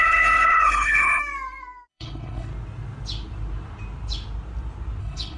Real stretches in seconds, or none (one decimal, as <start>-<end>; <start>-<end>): 1.2-1.9; 2.5-5.0